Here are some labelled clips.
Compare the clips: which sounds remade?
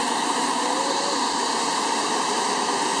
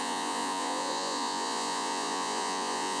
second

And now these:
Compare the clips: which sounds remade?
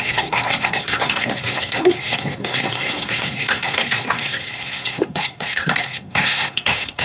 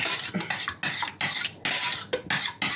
first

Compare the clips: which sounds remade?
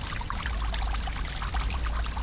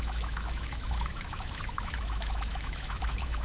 second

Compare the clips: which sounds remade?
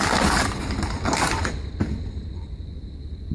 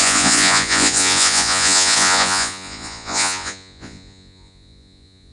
second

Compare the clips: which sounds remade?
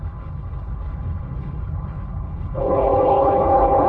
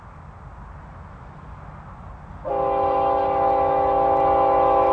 first